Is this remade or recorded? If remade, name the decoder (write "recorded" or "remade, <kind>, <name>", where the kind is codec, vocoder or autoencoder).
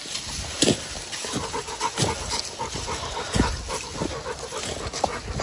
recorded